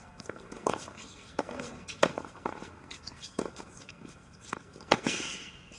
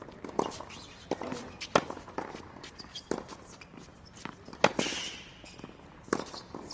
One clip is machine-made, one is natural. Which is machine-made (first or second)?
first